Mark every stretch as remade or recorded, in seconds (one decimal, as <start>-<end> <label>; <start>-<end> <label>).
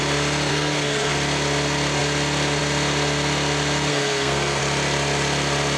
0.0-0.5 recorded; 0.5-1.1 remade; 1.1-3.9 recorded; 3.9-4.6 remade; 4.6-5.8 recorded